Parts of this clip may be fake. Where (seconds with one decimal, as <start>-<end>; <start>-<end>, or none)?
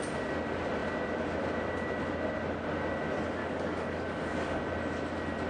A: 3.4-4.6